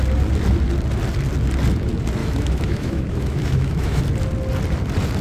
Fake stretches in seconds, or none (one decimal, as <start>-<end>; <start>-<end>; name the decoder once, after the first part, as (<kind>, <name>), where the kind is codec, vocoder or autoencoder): 2.2-4.0 (autoencoder, DAC-VAE)